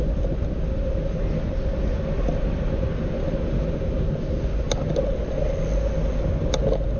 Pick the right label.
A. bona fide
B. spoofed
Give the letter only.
A